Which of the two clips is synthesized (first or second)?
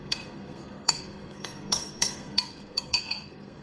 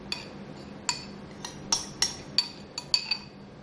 first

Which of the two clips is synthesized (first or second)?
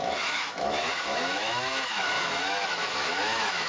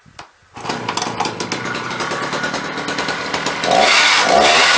first